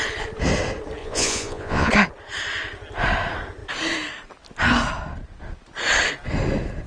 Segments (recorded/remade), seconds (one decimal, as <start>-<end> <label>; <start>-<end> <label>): 0.0-1.0 recorded; 1.0-1.9 remade; 1.9-6.9 recorded